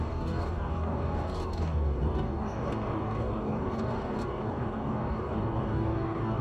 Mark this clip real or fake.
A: fake